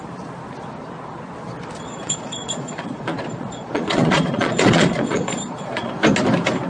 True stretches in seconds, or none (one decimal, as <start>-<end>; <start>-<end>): 0.0-1.9; 5.9-6.7